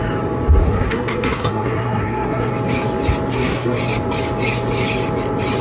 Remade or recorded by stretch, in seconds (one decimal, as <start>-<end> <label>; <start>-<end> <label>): 0.0-0.6 recorded; 0.6-2.5 remade; 2.5-3.3 recorded; 3.3-3.8 remade; 3.8-5.6 recorded

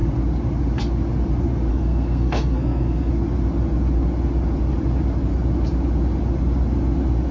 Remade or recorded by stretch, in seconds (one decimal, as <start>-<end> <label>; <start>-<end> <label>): 0.0-1.7 recorded; 1.7-3.1 remade; 3.1-7.3 recorded

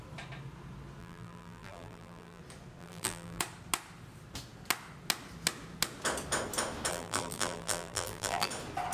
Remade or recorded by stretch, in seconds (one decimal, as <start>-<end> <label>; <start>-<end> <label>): 0.0-1.0 recorded; 1.0-2.4 remade; 2.4-2.8 recorded; 2.8-3.4 remade; 3.4-6.9 recorded; 6.9-8.5 remade; 8.5-8.9 recorded